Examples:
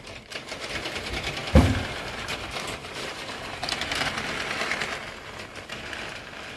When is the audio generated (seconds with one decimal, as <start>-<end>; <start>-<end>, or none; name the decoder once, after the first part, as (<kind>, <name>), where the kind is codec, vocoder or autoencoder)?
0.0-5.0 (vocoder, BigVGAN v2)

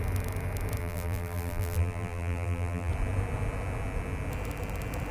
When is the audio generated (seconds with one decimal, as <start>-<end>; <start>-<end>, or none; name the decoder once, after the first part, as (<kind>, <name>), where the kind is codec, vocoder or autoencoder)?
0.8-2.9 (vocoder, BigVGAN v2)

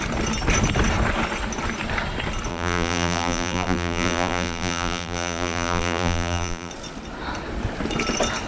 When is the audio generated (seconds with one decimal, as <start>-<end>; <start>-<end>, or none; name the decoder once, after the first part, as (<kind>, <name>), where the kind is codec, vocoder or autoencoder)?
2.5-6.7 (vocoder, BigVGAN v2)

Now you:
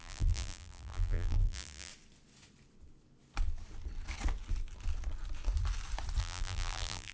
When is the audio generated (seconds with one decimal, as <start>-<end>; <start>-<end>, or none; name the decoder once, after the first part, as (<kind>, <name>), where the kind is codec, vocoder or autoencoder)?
0.0-1.9 (vocoder, BigVGAN v2); 6.2-7.1

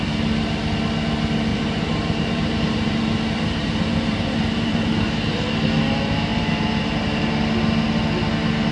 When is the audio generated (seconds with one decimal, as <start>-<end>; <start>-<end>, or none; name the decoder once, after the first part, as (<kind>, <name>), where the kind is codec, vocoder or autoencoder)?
1.5-5.4 (vocoder, BigVGAN v2); 6.3-7.2

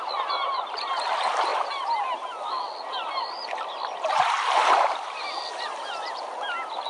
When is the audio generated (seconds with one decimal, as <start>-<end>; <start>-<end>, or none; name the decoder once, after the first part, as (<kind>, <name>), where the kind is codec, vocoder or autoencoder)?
4.6-5.4 (vocoder, BigVGAN v2)

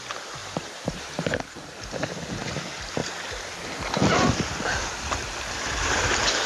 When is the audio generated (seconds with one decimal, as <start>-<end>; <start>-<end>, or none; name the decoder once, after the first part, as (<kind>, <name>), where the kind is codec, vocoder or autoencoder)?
0.4-1.3 (vocoder, BigVGAN v2)

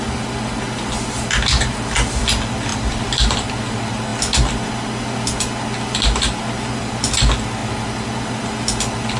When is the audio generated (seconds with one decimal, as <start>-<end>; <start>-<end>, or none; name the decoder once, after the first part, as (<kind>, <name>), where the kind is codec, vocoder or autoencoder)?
2.7-3.5 (vocoder, BigVGAN v2)